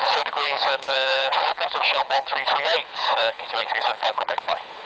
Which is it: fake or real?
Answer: fake